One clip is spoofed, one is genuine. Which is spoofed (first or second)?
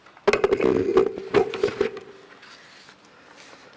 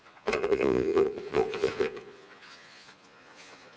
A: second